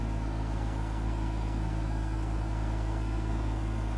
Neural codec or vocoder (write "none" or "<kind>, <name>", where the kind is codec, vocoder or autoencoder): codec, SNAC